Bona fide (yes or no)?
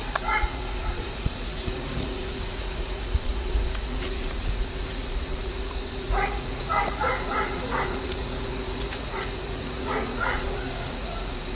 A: no